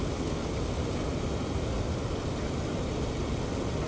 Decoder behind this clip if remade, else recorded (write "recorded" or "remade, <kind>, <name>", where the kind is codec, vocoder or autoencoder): recorded